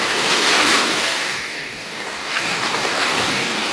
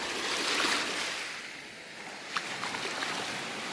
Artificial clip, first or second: first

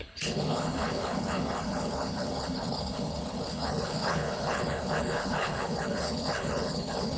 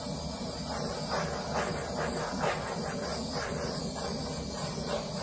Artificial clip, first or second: first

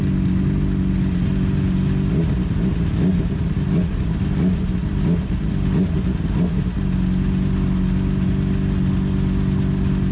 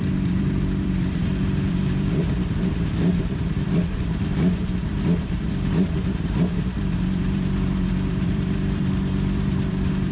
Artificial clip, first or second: second